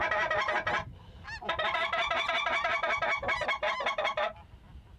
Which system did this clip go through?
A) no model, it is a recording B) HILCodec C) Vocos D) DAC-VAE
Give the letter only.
A